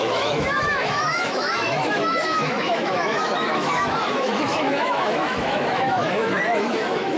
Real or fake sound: fake